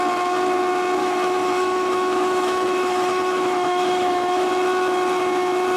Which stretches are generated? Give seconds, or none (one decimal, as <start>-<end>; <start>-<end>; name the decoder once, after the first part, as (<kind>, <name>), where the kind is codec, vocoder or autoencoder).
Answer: 1.0-4.5 (autoencoder, DAC-VAE)